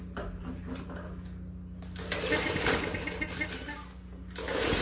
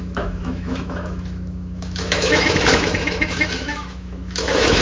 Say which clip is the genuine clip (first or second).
first